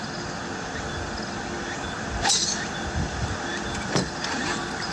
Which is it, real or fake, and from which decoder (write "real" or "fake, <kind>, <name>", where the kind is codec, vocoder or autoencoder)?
real